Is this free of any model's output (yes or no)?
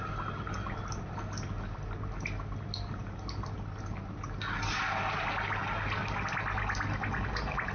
yes